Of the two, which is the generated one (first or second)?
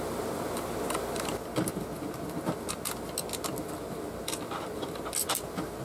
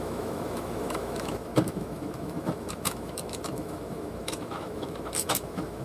second